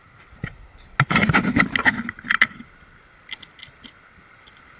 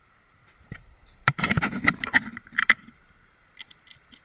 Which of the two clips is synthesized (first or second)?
second